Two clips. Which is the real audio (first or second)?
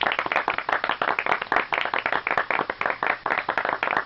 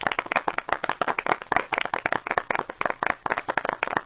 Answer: first